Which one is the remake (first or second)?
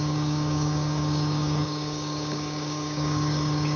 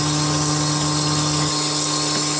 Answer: first